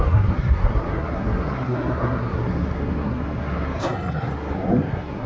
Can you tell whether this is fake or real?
fake